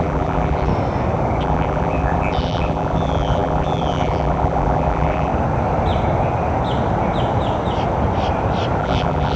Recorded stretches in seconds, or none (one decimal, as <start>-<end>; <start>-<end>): 0.7-1.4; 5.3-8.8